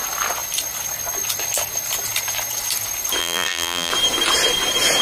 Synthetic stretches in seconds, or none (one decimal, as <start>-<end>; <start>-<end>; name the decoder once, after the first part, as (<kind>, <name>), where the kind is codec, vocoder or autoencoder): 3.2-3.9 (vocoder, BigVGAN v2)